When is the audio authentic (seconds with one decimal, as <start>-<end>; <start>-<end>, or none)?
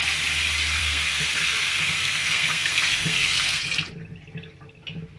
0.0-0.8; 3.6-5.2